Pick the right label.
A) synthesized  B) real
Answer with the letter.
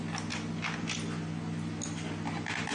B